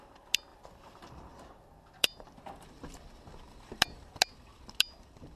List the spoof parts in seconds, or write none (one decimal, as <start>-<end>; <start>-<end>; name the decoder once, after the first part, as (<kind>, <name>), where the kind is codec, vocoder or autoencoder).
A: 0.5-2.4 (vocoder, BigVGAN v2)